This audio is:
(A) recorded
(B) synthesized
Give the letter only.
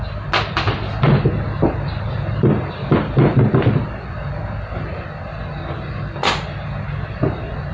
A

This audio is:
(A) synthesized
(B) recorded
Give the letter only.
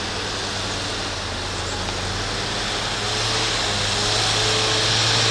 B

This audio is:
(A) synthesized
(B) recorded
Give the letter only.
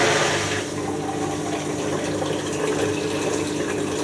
B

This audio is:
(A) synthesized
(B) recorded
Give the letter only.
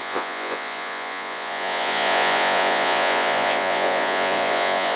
A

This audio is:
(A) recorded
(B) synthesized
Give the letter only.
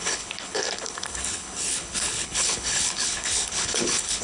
B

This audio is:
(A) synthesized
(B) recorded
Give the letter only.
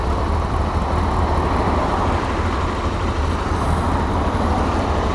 B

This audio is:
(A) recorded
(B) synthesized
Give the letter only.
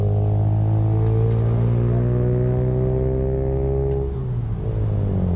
A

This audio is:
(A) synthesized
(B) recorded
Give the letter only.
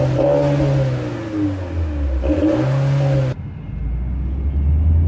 B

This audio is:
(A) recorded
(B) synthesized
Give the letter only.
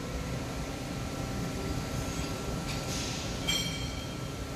B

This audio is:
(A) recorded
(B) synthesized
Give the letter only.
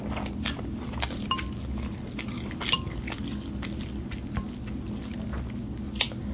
A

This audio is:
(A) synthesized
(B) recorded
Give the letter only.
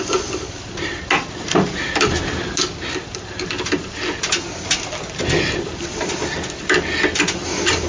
B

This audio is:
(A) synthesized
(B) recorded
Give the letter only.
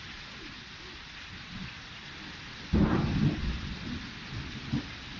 A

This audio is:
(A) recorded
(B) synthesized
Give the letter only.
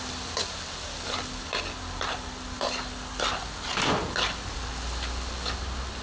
A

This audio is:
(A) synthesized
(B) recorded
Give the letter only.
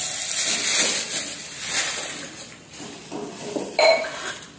B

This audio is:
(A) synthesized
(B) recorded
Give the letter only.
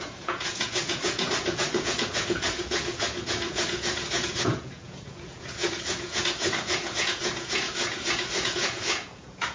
A